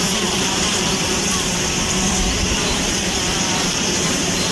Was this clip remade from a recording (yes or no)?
yes